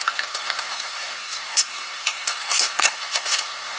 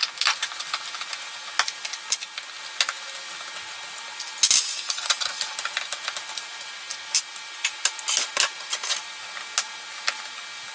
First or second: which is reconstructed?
first